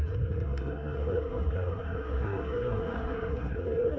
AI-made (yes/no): yes